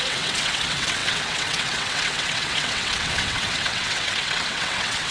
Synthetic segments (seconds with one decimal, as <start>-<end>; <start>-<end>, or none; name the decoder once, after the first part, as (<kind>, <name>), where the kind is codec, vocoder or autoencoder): 0.0-5.1 (vocoder, WaveNeXt)

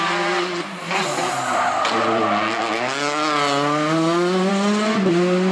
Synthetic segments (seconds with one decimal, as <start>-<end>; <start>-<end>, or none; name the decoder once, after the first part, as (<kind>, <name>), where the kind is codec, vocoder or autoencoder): none

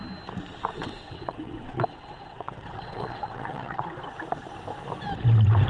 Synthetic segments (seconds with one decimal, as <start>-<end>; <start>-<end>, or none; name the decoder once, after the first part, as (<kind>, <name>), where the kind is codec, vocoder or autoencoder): 0.7-4.1 (vocoder, WaveNeXt)